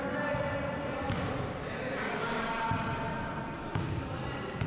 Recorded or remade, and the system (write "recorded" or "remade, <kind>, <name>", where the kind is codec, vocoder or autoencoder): recorded